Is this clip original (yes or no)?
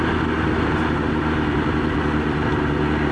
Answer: yes